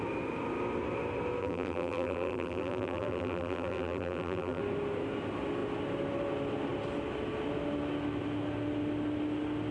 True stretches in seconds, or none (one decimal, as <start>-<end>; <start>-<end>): 0.0-1.4; 4.6-9.7